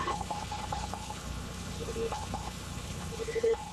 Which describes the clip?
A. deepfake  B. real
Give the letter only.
A